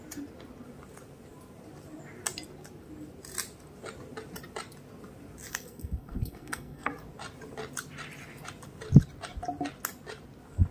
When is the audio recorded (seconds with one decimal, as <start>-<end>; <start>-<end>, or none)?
0.0-5.5; 6.9-10.7